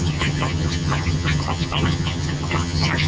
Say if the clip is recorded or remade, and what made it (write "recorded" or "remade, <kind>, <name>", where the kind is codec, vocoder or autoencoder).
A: remade, vocoder, HiFi-GAN